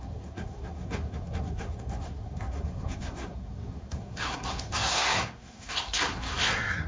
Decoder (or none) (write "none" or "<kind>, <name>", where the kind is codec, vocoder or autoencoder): codec, SNAC